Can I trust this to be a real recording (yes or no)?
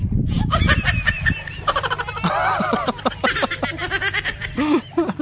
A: yes